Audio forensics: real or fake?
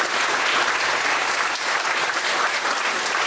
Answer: real